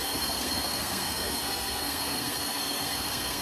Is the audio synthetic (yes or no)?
yes